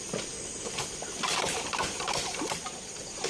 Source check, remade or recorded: recorded